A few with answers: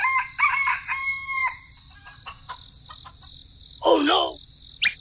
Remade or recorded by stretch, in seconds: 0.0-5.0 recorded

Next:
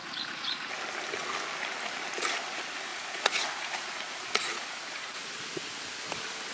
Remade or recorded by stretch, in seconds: 0.0-0.7 remade; 0.7-2.9 recorded; 2.9-5.2 remade; 5.2-6.5 recorded

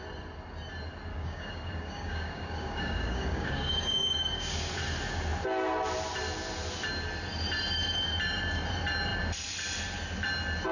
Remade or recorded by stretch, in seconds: 0.0-1.1 recorded; 1.1-4.7 remade; 4.7-10.7 recorded